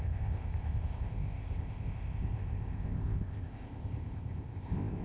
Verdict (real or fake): fake